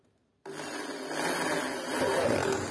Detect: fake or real real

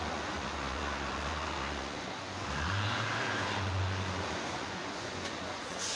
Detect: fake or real fake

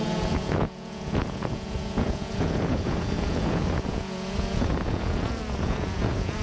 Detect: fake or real fake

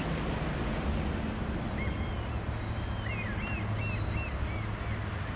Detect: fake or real real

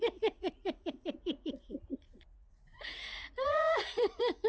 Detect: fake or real fake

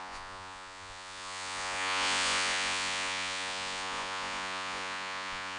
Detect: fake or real fake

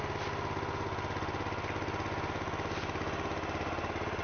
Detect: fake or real real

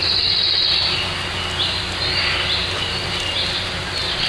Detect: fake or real real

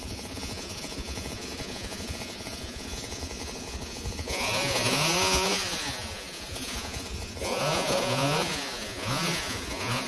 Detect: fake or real fake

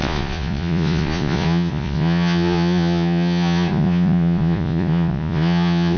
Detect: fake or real fake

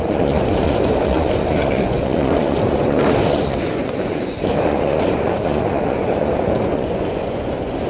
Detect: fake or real fake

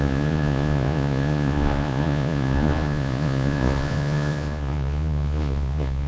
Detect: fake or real fake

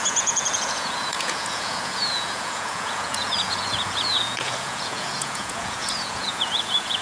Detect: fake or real fake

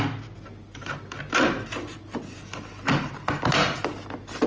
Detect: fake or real real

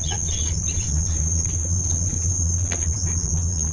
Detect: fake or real fake